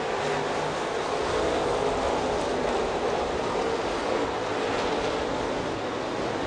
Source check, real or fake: real